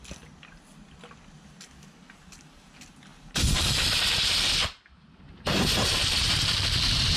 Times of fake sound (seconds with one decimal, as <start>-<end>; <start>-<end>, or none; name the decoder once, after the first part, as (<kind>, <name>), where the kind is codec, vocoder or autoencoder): 3.1-7.2 (vocoder, BigVGAN v2)